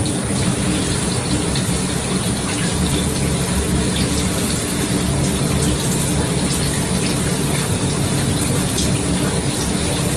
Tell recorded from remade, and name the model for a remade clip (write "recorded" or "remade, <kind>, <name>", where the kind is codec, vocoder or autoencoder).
recorded